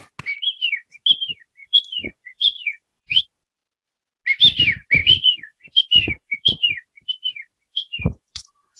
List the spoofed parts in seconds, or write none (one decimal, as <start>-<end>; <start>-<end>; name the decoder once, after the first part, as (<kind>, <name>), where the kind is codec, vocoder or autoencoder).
1.6-3.2 (vocoder, Vocos); 5.0-6.7; 7.7-8.8